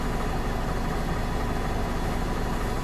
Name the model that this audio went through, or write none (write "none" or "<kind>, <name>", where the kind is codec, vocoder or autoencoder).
none